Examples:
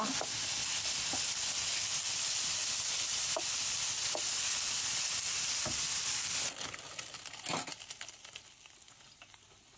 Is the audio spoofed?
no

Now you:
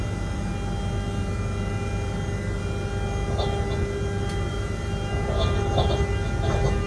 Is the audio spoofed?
no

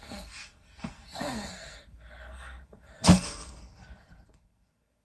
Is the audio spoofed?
yes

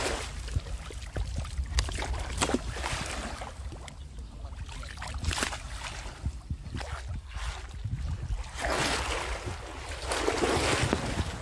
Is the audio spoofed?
no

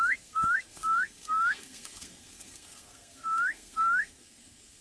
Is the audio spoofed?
yes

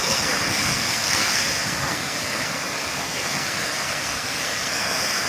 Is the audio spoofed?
yes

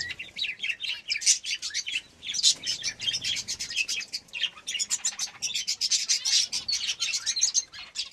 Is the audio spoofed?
no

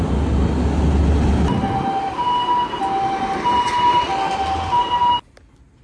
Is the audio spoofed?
no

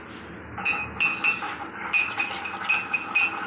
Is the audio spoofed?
no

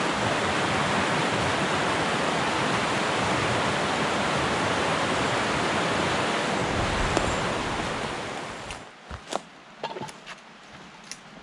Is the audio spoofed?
no